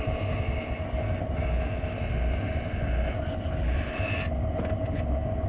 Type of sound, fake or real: real